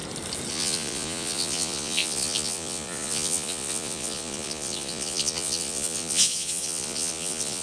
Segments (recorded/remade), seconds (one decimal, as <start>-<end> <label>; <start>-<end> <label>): 0.0-0.5 recorded; 0.5-7.6 remade